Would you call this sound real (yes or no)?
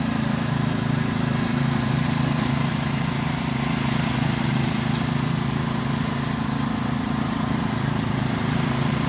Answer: no